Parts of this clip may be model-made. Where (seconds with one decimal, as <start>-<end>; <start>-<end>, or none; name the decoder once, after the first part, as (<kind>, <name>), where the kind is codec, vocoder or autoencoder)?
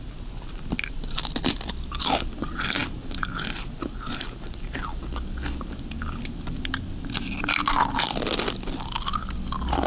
none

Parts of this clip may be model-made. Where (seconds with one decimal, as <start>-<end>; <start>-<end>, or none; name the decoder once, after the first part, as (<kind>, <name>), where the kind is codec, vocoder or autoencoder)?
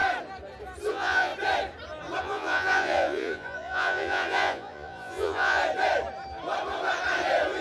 0.9-1.3 (vocoder, Vocos); 2.2-5.6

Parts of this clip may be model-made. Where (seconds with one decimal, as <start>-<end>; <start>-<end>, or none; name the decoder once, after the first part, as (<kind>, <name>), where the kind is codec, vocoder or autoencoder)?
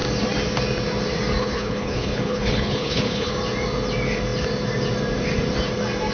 1.4-3.3 (codec, HILCodec)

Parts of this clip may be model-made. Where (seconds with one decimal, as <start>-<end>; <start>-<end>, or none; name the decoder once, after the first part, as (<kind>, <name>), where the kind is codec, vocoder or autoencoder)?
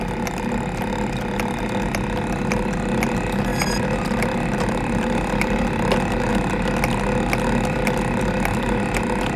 none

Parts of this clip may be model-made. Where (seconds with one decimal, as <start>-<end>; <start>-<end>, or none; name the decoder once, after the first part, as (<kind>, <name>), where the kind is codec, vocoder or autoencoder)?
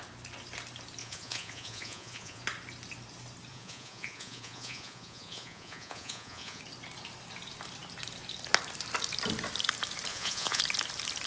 1.0-2.4 (vocoder, Vocos); 3.5-6.6; 10.1-10.6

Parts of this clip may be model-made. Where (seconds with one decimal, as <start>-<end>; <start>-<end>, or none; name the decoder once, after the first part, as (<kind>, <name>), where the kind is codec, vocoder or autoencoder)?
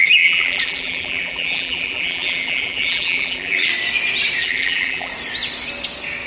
0.0-3.7 (vocoder, BigVGAN v2); 4.4-5.1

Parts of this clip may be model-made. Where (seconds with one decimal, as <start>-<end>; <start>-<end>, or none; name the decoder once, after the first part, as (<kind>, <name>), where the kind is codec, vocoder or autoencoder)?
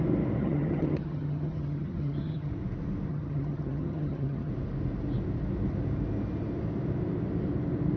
0.4-2.5 (vocoder, HiFi-GAN); 3.1-4.5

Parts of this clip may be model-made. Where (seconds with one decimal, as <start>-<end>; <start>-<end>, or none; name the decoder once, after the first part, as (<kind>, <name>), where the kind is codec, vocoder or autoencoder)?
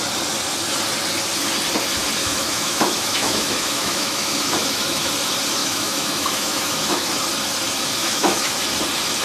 2.2-5.1 (autoencoder, DAC-VAE); 5.6-7.1; 8.0-8.6